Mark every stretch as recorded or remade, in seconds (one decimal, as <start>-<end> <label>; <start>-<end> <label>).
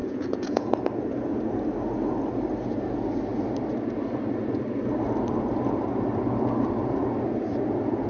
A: 0.0-0.7 remade; 0.7-8.1 recorded